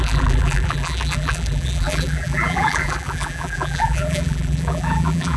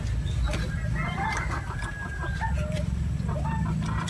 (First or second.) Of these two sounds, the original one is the second